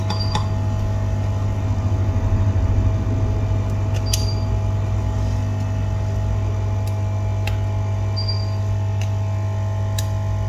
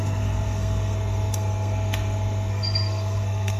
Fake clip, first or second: second